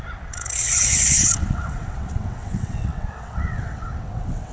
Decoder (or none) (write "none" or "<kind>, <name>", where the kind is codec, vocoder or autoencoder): vocoder, WaveNeXt